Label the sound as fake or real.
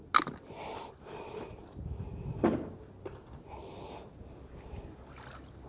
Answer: real